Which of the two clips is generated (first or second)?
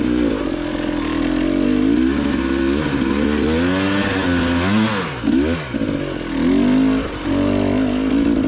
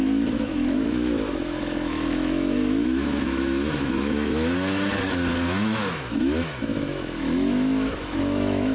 second